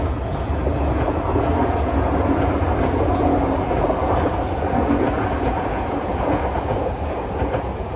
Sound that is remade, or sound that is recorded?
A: remade